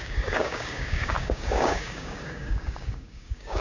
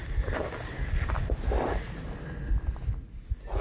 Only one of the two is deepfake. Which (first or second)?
first